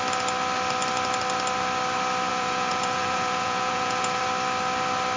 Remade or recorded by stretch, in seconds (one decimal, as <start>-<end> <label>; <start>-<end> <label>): 0.0-2.3 recorded; 2.3-4.2 remade; 4.2-5.2 recorded